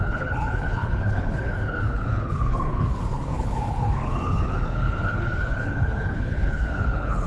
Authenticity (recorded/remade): remade